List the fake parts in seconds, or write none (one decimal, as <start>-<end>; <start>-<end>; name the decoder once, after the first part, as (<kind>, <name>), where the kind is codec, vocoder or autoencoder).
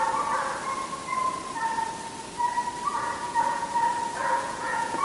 2.9-3.7 (vocoder, Vocos); 4.2-5.0